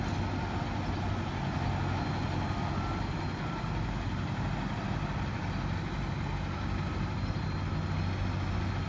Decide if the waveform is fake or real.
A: real